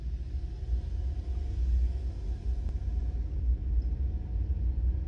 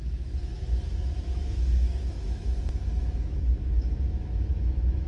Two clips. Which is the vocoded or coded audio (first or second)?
second